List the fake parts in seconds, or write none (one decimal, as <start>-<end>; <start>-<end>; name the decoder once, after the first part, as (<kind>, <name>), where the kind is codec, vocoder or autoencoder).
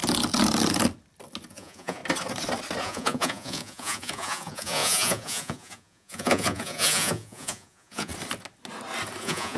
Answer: 1.5-2.0 (vocoder, Vocos); 2.8-8.1; 9.2-9.6